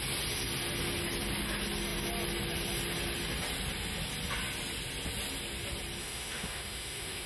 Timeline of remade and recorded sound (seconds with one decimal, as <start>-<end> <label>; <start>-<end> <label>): 0.0-6.0 recorded; 6.0-7.3 remade